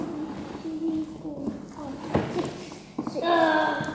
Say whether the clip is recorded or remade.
recorded